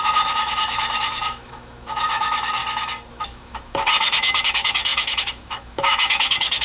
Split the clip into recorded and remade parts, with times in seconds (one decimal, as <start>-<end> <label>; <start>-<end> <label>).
0.0-2.6 remade; 2.6-3.1 recorded; 3.1-6.6 remade